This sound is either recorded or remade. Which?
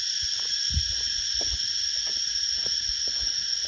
recorded